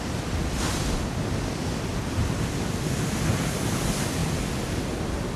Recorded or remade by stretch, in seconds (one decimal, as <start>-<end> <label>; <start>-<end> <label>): 0.0-2.2 recorded; 2.2-2.9 remade; 2.9-5.4 recorded